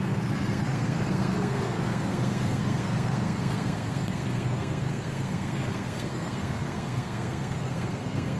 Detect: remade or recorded remade